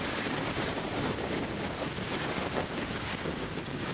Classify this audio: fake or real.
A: fake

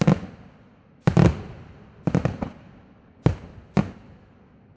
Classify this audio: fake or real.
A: real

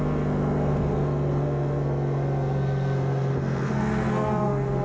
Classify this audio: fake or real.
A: fake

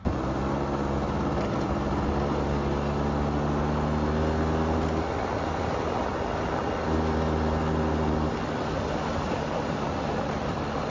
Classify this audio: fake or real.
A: real